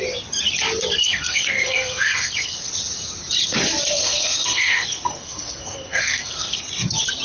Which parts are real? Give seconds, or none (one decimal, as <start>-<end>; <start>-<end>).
0.0-1.0; 2.7-4.0; 6.6-7.2